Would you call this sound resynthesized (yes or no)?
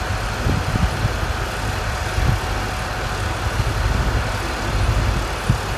no